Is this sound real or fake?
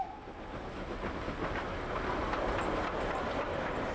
real